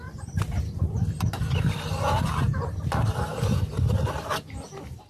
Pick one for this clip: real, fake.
real